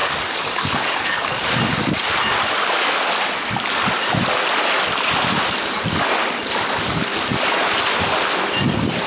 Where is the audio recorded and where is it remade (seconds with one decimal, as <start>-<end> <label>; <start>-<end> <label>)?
0.0-1.5 remade; 1.5-9.1 recorded